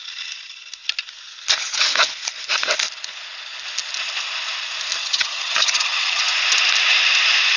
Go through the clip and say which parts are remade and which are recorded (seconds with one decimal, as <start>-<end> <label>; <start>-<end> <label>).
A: 0.0-5.0 recorded; 5.0-6.2 remade; 6.2-7.6 recorded